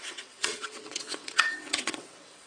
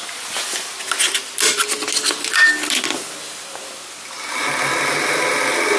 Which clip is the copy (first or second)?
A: first